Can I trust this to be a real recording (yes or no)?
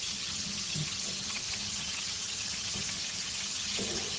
no